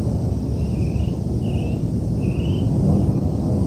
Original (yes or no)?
yes